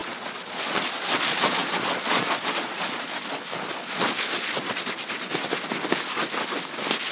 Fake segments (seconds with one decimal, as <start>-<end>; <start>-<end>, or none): 0.0-3.0; 3.7-4.9